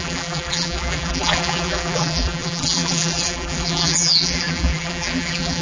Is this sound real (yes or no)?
no